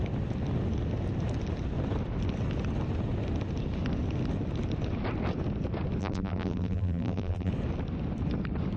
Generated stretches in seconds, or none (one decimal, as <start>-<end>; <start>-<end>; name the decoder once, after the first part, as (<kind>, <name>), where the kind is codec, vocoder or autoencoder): 6.0-7.5 (vocoder, BigVGAN v2)